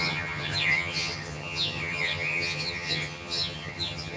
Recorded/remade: remade